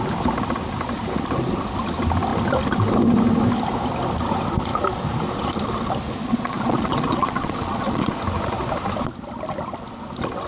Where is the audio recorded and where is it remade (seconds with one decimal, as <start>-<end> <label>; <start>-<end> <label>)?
0.0-6.2 recorded; 6.2-8.2 remade; 8.2-10.5 recorded

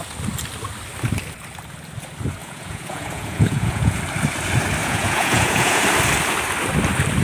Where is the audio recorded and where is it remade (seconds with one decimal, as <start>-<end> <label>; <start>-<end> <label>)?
0.0-2.4 recorded; 2.4-4.0 remade; 4.0-4.8 recorded; 4.8-5.8 remade; 5.8-7.2 recorded

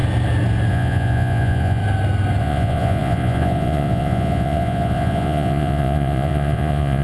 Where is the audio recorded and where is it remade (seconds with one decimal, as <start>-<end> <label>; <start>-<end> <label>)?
0.0-0.7 recorded; 0.7-1.8 remade; 1.8-2.4 recorded; 2.4-7.0 remade

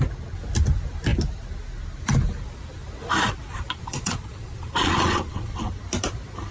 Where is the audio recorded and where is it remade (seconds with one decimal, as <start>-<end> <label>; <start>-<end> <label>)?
0.0-3.5 recorded; 3.5-5.7 remade; 5.7-6.5 recorded

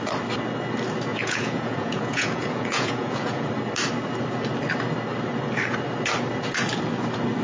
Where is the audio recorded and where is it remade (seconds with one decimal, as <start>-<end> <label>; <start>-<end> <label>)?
0.0-1.1 recorded; 1.1-3.5 remade; 3.5-7.4 recorded

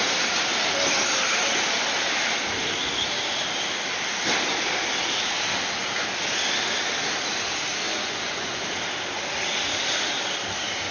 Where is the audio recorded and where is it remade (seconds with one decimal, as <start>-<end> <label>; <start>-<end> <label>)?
0.0-7.9 recorded; 7.9-8.6 remade; 8.6-10.9 recorded

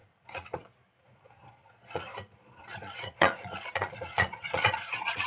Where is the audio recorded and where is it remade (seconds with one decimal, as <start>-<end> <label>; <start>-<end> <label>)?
0.0-5.3 remade